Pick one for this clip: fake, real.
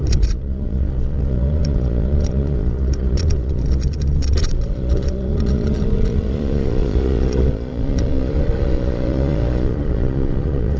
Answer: fake